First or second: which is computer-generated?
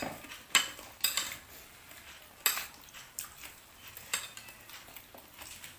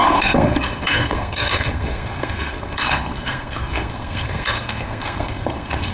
second